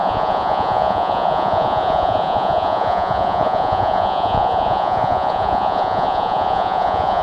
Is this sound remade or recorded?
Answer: remade